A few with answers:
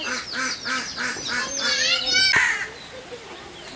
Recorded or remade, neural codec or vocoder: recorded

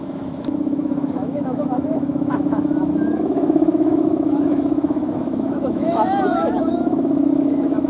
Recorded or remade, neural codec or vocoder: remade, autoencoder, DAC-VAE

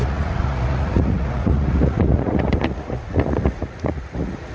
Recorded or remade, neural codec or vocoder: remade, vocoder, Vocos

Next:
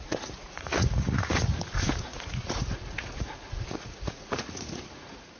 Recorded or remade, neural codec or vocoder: remade, vocoder, Vocos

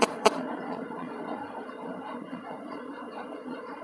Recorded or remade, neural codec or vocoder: remade, vocoder, Vocos